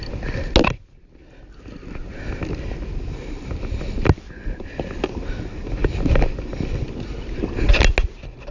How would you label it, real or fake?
real